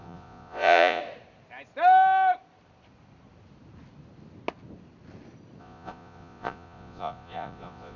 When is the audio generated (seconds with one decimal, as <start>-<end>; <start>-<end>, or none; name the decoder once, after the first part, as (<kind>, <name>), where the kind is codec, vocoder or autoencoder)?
0.0-1.0 (vocoder, Vocos); 5.6-8.0